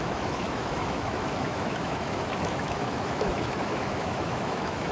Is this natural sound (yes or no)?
no